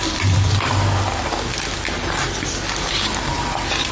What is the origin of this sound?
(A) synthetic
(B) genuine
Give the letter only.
B